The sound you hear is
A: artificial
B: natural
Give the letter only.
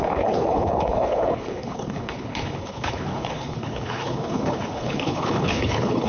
A